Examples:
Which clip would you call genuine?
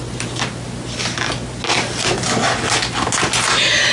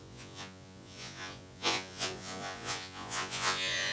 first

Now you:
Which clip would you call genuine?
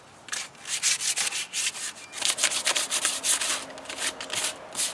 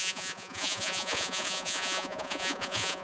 first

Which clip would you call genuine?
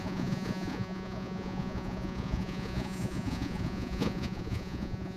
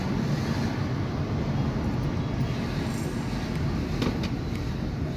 second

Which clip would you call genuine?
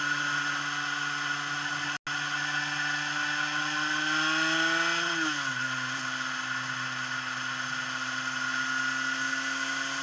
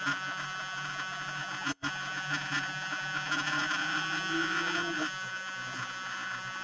first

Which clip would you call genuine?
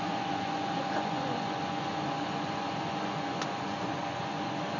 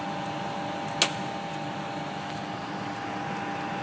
second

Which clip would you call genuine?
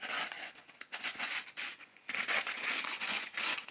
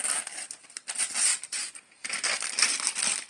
second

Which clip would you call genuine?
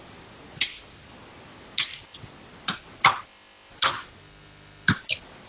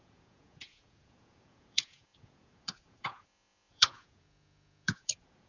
first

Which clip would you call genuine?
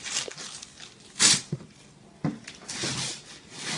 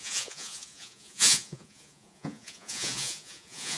first